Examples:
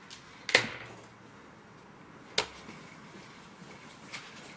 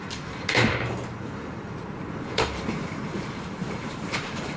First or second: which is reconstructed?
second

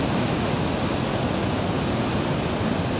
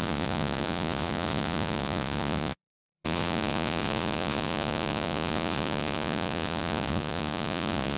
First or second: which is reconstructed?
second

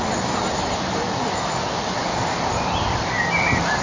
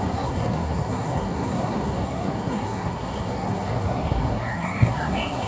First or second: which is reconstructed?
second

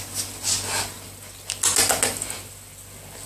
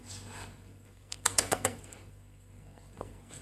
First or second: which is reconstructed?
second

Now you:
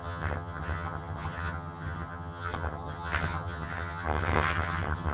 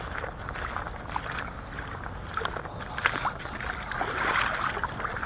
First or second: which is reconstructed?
first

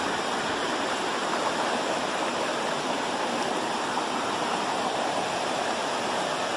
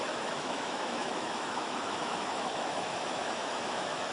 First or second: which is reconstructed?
second